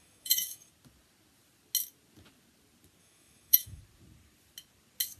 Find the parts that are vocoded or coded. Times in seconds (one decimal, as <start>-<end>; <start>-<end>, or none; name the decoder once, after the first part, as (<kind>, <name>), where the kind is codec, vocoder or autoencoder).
0.0-0.7 (autoencoder, DAC-VAE); 3.0-3.8